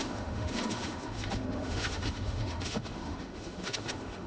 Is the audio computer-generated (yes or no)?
yes